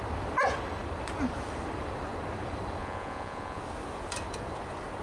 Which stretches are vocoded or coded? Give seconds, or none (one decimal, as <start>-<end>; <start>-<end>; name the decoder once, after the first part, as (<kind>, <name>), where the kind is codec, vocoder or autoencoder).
2.8-3.6 (vocoder, Vocos)